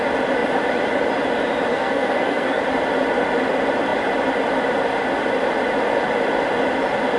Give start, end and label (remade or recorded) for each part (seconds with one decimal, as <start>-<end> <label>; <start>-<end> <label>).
0.0-1.7 recorded; 1.7-2.6 remade; 2.6-7.2 recorded